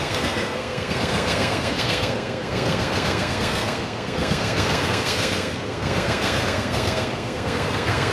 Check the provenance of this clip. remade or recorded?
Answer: remade